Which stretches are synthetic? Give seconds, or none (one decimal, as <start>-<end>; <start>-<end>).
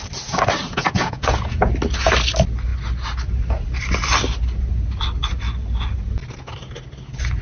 0.8-1.7